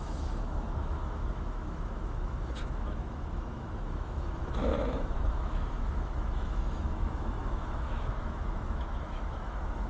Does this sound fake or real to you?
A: fake